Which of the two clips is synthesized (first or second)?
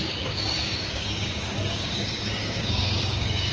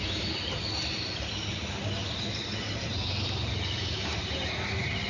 first